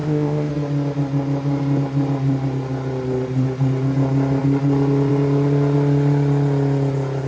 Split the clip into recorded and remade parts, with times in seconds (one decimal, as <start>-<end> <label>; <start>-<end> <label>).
0.0-0.5 remade; 0.5-7.3 recorded